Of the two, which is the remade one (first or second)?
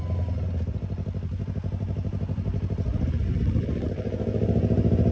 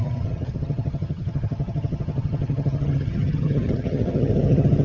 second